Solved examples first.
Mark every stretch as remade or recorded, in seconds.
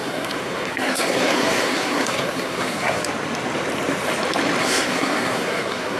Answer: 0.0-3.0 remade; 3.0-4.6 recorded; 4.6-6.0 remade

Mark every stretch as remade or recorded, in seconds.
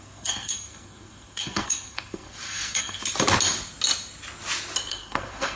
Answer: 0.0-3.0 remade; 3.0-4.9 recorded; 4.9-5.6 remade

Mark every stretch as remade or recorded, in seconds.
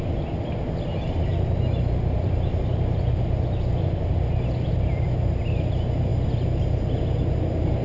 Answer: 0.0-7.8 recorded